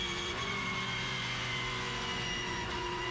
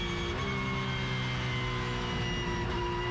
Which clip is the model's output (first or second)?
first